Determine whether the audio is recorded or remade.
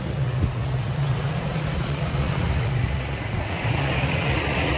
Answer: remade